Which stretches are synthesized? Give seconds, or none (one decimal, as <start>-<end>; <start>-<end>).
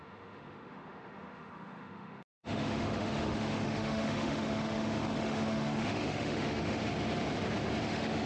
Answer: 0.0-6.8; 7.8-8.3